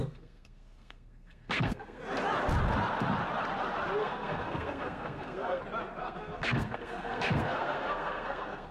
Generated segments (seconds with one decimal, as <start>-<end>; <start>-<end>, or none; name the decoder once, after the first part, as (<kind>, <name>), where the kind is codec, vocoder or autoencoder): 0.0-2.0 (codec, SNAC); 4.0-5.6; 6.0-8.7